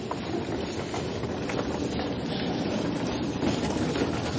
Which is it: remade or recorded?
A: recorded